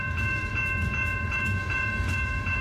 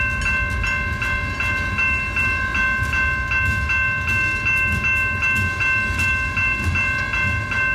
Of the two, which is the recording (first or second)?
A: second